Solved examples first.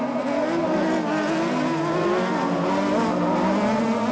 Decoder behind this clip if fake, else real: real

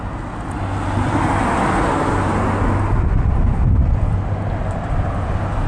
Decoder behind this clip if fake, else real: real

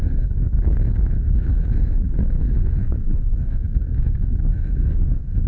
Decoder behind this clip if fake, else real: fake, codec, SNAC